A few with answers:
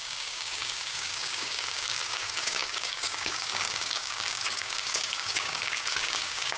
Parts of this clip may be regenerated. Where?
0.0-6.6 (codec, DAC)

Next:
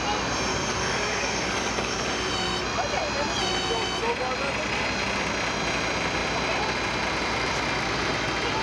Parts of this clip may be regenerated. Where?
0.5-2.1 (codec, DAC)

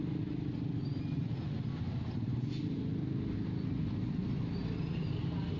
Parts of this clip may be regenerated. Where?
none

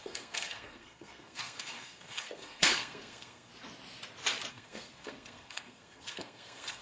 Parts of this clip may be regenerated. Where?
0.0-3.5 (codec, SNAC); 4.5-6.8